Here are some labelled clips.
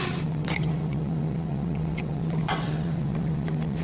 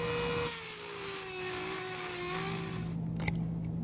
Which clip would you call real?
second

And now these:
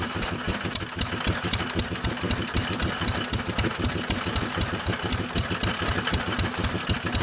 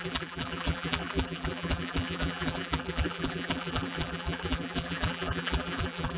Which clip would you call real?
first